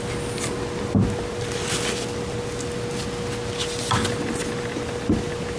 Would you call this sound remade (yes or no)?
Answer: no